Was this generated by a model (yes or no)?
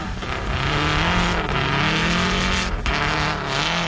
no